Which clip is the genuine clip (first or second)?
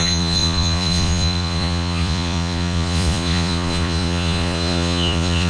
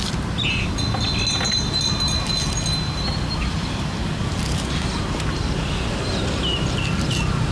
second